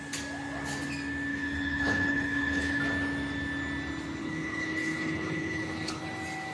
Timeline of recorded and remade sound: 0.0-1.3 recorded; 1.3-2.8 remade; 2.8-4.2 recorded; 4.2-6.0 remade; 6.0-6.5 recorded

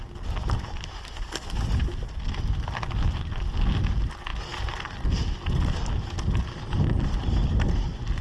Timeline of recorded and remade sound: 0.0-8.2 recorded

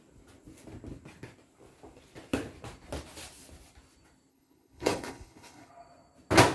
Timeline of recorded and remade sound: 0.0-4.3 recorded; 4.3-5.7 remade; 5.7-6.5 recorded